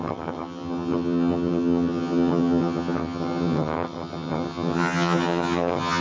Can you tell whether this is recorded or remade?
remade